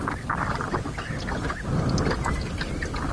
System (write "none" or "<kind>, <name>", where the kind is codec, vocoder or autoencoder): none